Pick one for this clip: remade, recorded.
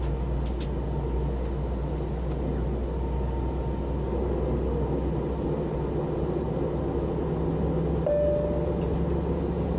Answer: recorded